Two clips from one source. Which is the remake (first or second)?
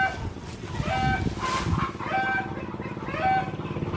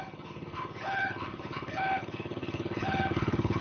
second